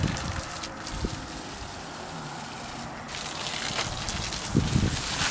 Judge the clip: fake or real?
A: real